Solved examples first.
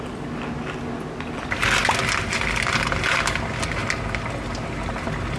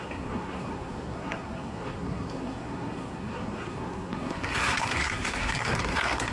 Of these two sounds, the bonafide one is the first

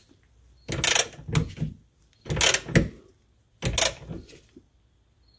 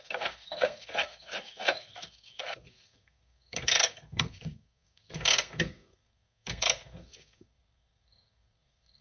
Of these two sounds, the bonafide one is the first